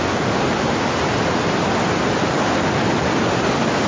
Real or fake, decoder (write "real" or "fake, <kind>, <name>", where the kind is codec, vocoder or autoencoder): real